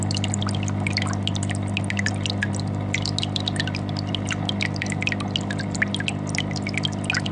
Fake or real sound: real